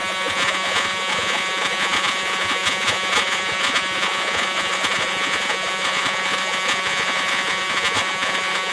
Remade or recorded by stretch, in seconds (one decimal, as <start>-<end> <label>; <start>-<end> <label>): 0.0-8.7 remade